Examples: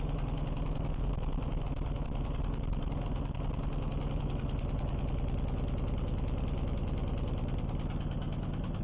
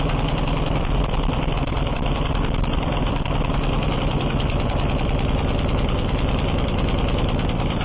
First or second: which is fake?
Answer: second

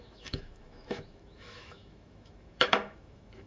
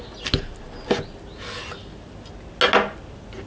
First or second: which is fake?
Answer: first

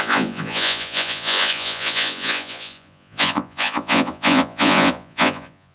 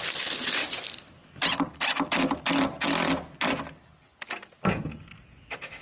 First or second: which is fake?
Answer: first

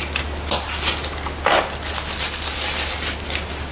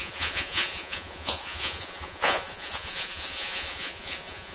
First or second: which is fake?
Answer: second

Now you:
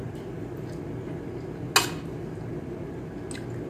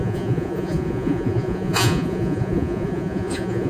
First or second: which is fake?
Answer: second